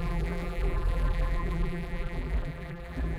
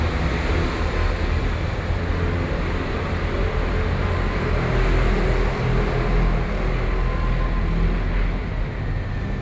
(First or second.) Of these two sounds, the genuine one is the second